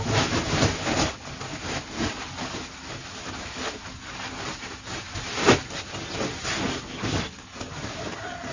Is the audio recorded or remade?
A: recorded